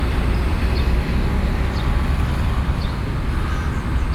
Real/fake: real